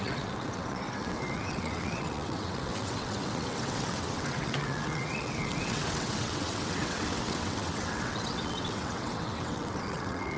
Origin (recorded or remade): remade